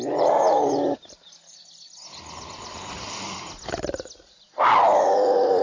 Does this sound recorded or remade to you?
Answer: recorded